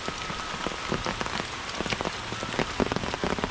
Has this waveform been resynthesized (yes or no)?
no